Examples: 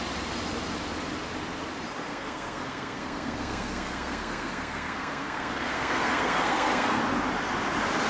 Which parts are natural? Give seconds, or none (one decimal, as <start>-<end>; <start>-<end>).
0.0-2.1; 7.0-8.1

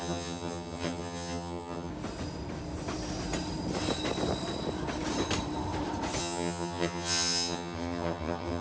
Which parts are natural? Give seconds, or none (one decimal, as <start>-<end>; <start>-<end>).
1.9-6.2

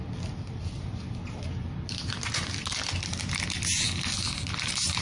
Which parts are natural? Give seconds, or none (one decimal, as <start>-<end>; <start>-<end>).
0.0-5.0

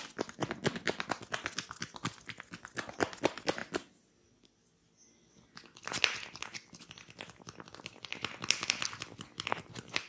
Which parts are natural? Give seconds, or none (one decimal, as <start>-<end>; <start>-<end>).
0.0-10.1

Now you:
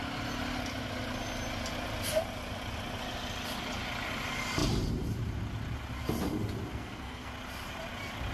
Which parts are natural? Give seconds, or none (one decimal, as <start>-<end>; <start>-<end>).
0.0-6.7; 7.3-8.3

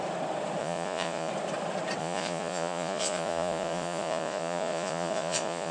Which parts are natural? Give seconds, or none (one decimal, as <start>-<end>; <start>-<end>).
0.0-0.6; 1.3-2.0

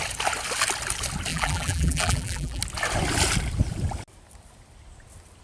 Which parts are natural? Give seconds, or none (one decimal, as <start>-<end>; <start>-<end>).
0.0-1.3; 2.6-5.4